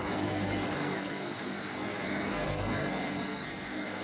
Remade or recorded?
remade